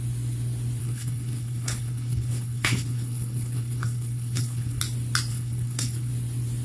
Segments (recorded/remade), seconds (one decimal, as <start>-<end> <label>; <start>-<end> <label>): 0.0-0.8 recorded; 0.8-4.8 remade; 4.8-5.3 recorded; 5.3-6.1 remade; 6.1-6.6 recorded